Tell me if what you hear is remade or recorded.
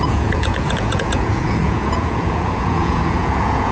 remade